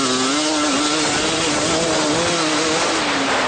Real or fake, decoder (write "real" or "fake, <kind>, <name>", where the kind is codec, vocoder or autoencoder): real